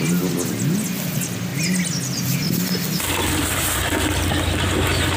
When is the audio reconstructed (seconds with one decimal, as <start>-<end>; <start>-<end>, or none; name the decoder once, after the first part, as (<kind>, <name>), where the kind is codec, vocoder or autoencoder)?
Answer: none